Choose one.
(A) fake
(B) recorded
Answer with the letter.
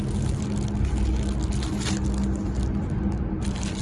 B